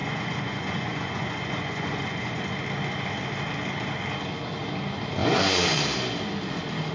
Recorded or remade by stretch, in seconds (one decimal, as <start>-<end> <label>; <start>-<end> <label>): 0.0-2.4 remade; 2.4-5.2 recorded; 5.2-5.8 remade; 5.8-6.9 recorded